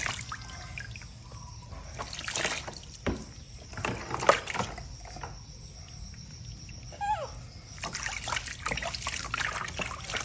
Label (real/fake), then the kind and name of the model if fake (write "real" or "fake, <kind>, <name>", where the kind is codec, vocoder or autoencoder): real